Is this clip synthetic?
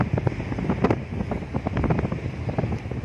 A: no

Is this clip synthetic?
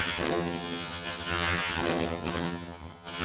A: yes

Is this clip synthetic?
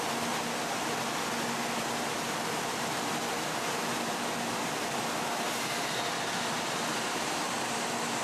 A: no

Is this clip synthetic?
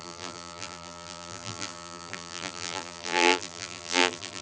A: yes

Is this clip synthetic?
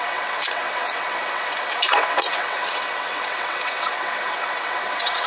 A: yes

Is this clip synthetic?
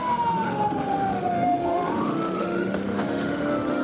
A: yes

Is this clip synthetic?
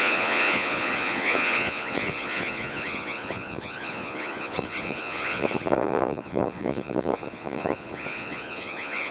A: yes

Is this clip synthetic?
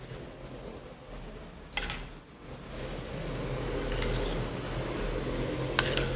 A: no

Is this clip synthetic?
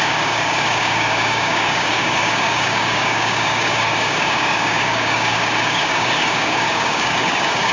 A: yes